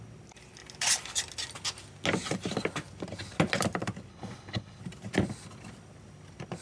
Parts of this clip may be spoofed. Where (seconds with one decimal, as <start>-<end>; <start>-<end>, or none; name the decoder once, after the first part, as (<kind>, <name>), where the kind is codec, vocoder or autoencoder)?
4.1-4.8 (codec, HILCodec)